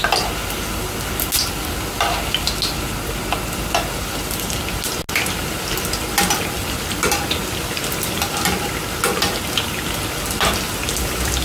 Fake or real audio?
real